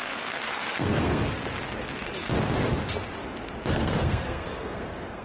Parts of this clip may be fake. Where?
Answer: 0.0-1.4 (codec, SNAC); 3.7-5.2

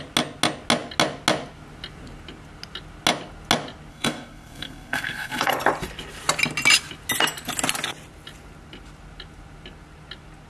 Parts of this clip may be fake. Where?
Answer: 3.9-5.5 (codec, SNAC)